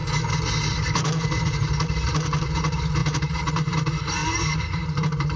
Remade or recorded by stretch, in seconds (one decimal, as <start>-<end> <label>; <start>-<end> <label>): 0.0-0.7 recorded; 0.7-5.4 remade

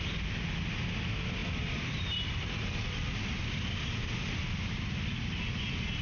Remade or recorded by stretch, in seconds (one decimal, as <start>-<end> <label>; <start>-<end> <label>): 0.0-1.4 recorded; 1.4-4.8 remade; 4.8-6.0 recorded

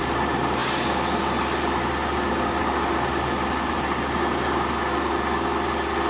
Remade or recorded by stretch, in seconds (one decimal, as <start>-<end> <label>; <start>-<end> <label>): 0.0-6.1 recorded

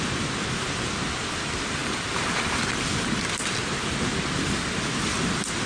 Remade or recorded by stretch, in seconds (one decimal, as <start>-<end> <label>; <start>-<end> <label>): 0.0-1.8 recorded; 1.8-2.6 remade; 2.6-5.7 recorded